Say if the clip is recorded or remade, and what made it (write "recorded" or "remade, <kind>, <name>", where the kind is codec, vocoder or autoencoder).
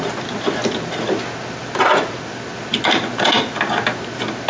recorded